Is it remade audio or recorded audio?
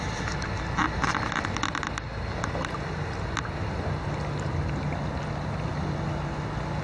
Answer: recorded